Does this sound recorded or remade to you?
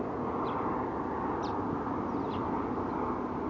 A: recorded